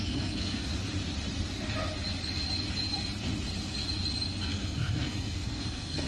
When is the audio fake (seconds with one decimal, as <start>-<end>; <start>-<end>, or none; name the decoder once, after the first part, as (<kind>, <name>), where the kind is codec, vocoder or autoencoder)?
0.0-0.7 (codec, SNAC); 4.4-6.1